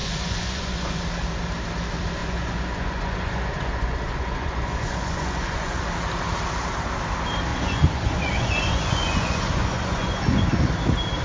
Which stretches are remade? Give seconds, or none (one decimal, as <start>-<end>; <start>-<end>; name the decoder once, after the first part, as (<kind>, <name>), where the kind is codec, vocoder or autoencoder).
0.0-1.0 (vocoder, Vocos); 2.2-5.8; 7.5-10.7